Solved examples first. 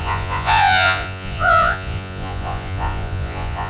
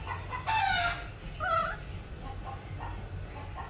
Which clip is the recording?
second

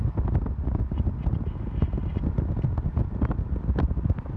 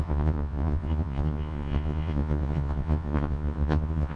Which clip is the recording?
first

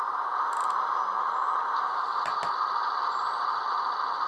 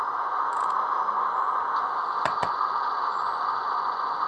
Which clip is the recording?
first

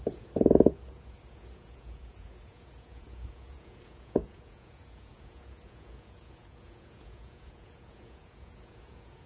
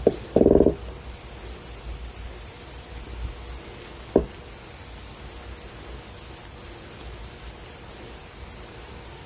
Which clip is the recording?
second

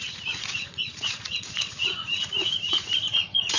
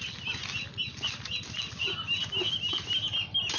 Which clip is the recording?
second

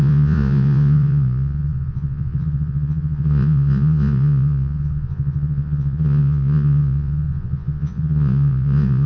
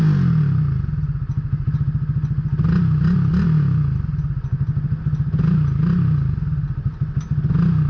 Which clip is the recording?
second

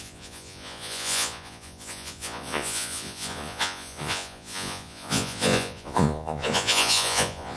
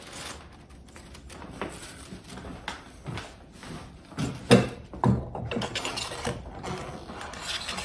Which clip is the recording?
second